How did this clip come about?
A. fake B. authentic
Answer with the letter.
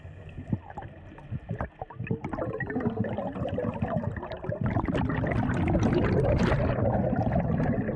B